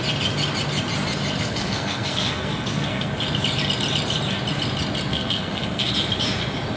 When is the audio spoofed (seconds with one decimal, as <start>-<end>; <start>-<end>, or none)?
1.4-3.1; 5.1-5.9